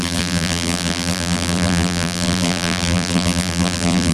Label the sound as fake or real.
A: fake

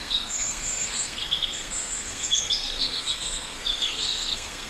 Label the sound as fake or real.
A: fake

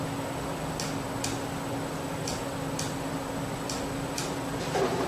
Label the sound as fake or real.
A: real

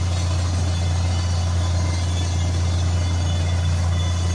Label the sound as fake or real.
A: real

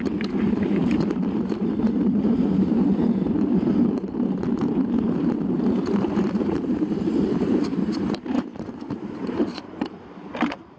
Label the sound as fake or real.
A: fake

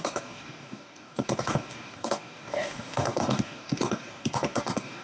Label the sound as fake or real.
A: fake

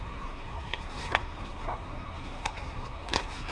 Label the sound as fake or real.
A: fake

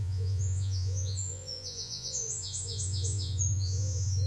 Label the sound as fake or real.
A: fake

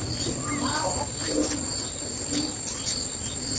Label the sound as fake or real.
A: real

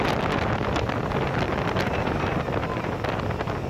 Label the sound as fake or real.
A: real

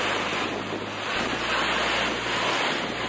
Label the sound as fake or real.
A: real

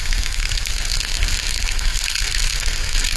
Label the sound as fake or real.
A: fake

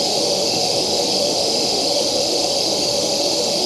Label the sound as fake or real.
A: fake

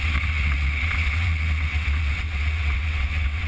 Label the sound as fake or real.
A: fake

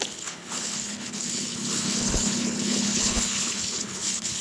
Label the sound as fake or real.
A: fake